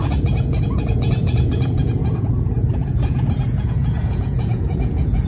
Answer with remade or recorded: remade